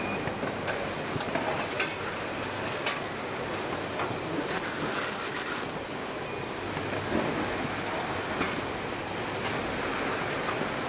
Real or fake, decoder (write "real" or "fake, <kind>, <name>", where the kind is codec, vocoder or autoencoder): real